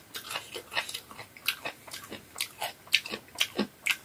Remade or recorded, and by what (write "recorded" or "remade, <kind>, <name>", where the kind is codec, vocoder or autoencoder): recorded